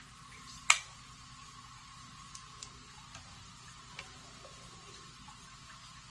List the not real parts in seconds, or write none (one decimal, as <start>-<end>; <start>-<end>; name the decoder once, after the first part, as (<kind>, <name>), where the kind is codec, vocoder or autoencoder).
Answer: none